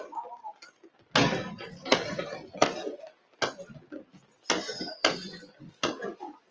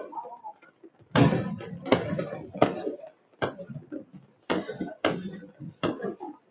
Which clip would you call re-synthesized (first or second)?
second